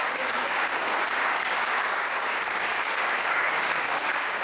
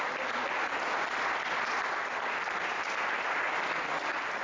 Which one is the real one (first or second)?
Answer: second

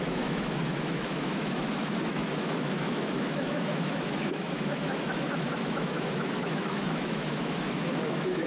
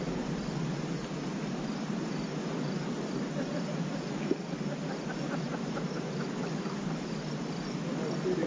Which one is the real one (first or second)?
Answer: second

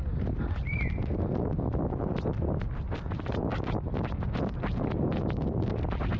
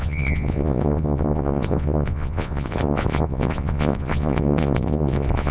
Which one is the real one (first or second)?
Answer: first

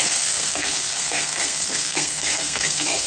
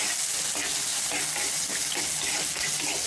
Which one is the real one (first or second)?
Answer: second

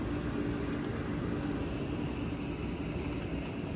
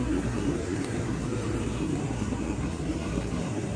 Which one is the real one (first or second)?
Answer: first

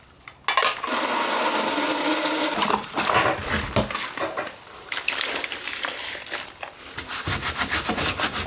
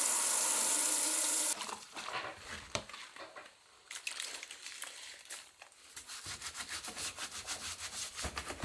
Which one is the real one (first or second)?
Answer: first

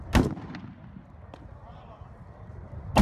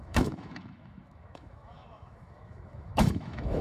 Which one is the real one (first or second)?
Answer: first